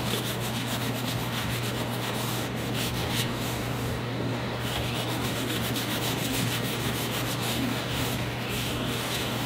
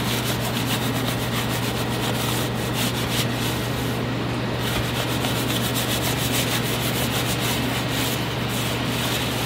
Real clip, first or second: second